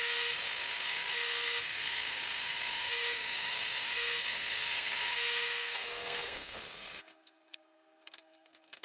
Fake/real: fake